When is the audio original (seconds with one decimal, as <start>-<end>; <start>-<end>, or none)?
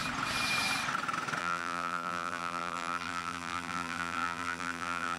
0.0-1.4